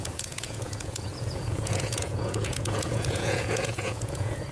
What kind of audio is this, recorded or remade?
remade